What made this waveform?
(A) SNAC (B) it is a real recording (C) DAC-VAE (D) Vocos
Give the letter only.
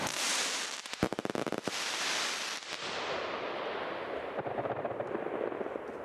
B